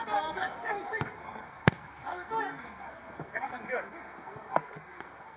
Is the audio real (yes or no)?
no